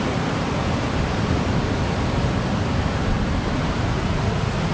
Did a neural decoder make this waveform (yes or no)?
no